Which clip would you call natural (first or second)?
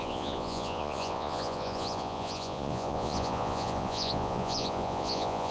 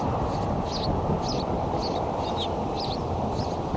second